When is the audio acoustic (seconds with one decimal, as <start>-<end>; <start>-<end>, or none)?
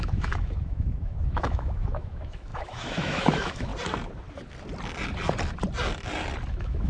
3.7-6.5